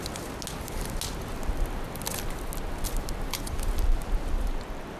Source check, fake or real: real